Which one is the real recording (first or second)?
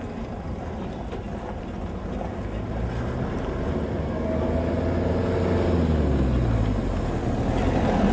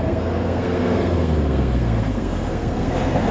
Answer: first